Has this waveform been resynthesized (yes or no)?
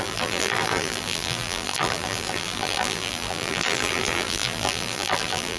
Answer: yes